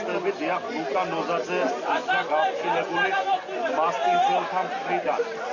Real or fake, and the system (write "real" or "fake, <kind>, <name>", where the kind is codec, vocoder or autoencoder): real